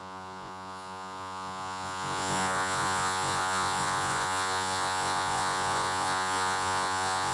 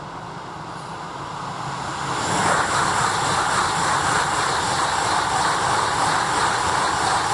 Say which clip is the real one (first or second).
second